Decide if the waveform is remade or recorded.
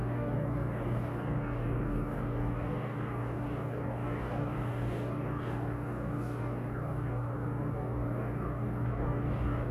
remade